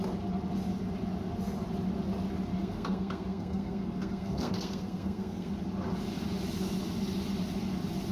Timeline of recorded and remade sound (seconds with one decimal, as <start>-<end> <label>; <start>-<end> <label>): 0.0-2.6 recorded; 2.6-5.5 remade; 5.5-8.1 recorded